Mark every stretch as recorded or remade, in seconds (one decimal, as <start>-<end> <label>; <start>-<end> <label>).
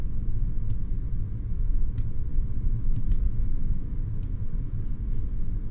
0.0-2.3 recorded; 2.3-5.0 remade; 5.0-5.7 recorded